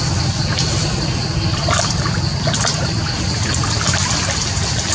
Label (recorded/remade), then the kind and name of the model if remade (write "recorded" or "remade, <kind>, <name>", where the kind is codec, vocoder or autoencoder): recorded